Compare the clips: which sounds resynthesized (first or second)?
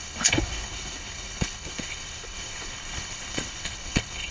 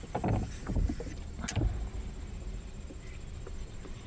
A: first